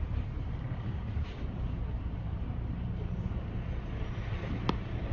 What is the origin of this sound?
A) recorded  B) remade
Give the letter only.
B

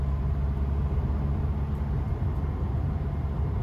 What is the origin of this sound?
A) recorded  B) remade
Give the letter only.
A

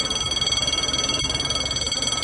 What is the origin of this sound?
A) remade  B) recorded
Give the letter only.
B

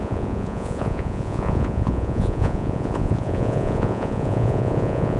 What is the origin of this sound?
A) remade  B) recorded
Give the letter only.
A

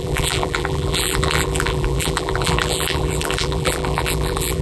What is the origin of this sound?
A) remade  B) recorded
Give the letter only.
A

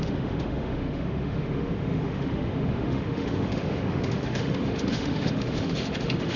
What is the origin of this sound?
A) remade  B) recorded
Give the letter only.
A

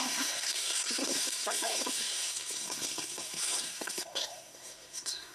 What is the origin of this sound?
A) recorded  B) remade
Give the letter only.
B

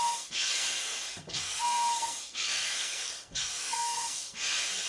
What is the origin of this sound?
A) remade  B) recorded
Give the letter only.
A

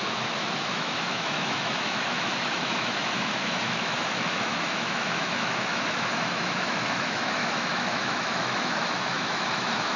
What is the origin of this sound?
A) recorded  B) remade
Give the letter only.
B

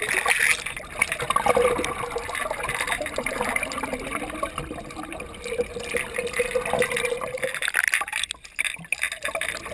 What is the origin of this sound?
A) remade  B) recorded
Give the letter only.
B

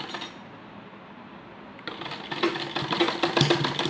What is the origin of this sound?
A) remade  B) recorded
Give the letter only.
B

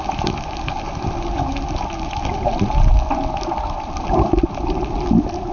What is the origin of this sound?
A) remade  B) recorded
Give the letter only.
B